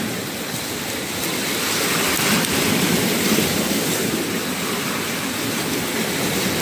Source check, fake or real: real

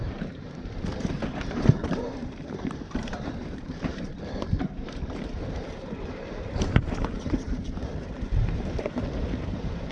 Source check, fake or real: fake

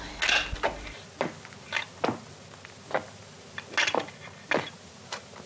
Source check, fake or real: real